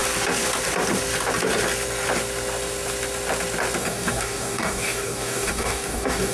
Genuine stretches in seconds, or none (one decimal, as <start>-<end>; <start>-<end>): 0.0-3.8